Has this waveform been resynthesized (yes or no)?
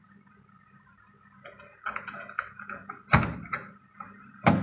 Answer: no